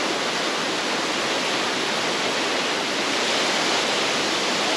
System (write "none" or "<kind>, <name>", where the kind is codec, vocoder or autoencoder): none